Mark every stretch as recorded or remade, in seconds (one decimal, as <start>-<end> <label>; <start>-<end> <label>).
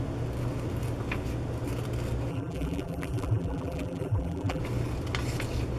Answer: 0.0-2.3 recorded; 2.3-4.6 remade; 4.6-5.8 recorded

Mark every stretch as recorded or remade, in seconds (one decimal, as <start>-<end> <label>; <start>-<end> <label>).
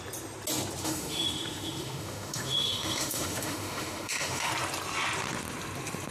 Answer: 0.0-0.8 recorded; 0.8-4.5 remade; 4.5-6.1 recorded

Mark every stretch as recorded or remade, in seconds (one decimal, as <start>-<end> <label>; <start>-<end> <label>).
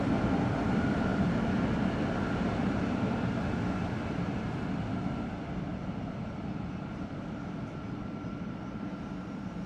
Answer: 0.0-1.1 recorded; 1.1-4.9 remade; 4.9-5.7 recorded; 5.7-9.0 remade; 9.0-9.7 recorded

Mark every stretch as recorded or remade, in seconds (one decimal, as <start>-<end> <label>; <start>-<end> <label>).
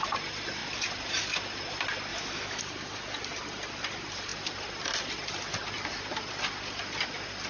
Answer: 0.0-2.1 recorded; 2.1-2.6 remade; 2.6-7.5 recorded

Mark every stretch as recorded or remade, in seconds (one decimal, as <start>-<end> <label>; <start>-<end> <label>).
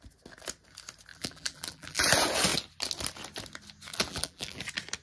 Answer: 0.0-1.1 recorded; 1.1-2.1 remade; 2.1-3.9 recorded; 3.9-4.6 remade; 4.6-5.0 recorded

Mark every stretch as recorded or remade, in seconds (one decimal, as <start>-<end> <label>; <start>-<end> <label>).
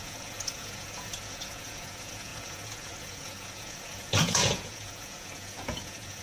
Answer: 0.0-6.2 remade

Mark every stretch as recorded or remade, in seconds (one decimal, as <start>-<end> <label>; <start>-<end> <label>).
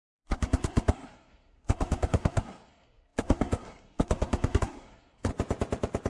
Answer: 0.0-5.3 remade; 5.3-6.1 recorded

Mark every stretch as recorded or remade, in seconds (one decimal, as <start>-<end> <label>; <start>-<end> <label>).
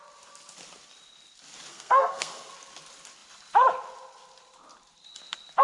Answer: 0.0-1.7 recorded; 1.7-2.5 remade; 2.5-5.6 recorded